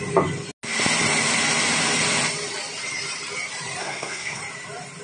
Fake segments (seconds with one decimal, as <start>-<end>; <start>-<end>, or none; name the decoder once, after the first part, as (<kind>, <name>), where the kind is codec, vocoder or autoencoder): 3.8-4.4 (codec, SNAC)